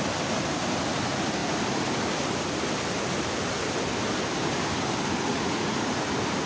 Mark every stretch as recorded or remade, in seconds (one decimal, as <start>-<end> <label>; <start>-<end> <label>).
0.0-5.3 recorded; 5.3-6.1 remade; 6.1-6.5 recorded